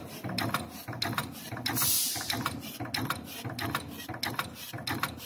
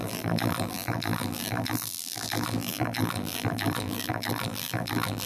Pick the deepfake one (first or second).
second